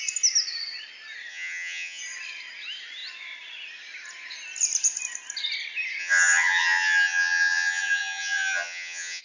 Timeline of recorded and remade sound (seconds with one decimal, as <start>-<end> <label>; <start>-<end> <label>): 0.0-1.3 recorded; 1.3-2.0 remade; 2.0-6.0 recorded; 6.0-9.2 remade